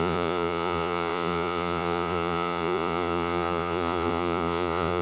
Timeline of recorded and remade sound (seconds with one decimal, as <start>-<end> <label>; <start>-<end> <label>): 0.0-5.0 remade